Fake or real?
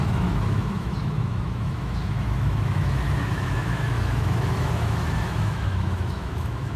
fake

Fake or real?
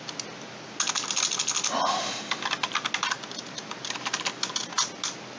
real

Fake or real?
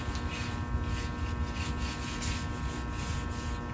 real